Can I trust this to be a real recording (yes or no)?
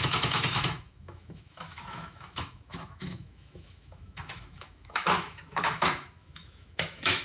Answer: no